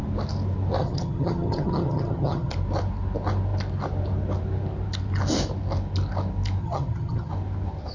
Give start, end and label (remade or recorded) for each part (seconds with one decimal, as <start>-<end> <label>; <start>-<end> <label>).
0.0-0.8 recorded; 0.8-2.5 remade; 2.5-6.6 recorded; 6.6-7.3 remade; 7.3-7.9 recorded